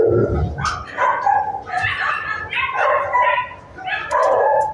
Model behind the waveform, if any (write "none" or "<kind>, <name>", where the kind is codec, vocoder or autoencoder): none